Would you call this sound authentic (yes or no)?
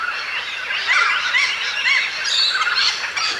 yes